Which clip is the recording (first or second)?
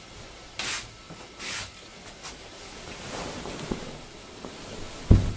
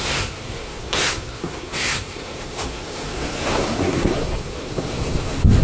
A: first